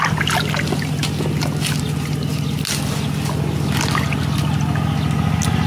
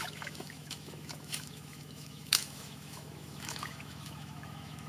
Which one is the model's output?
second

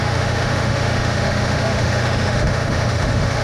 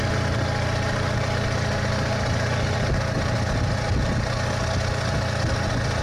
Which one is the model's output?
first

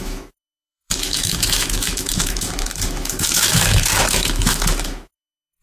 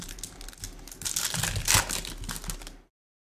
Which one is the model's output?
first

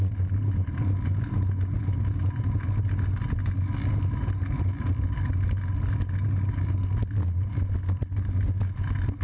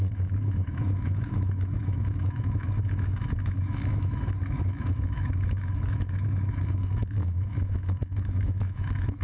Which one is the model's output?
second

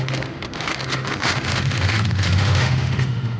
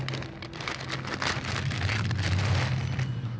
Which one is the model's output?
first